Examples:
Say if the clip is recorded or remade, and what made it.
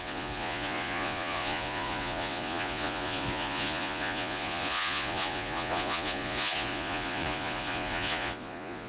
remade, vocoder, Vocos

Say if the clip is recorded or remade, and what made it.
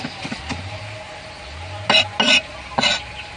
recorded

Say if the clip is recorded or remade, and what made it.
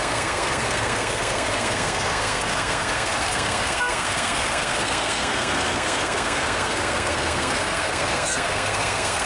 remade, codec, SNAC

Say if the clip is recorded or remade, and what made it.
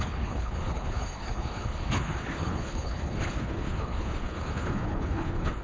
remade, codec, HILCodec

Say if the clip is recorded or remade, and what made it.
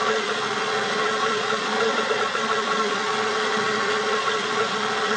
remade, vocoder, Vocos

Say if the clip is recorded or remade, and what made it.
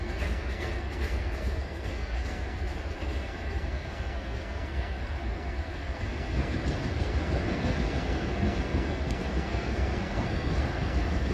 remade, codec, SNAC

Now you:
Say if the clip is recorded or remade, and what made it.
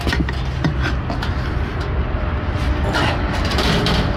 recorded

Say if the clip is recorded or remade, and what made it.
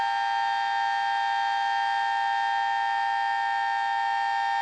recorded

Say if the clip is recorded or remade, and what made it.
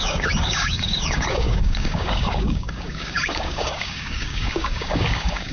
remade, codec, DAC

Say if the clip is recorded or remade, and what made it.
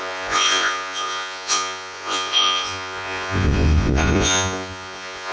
remade, vocoder, Vocos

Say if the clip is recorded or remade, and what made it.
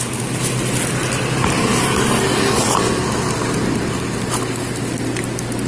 recorded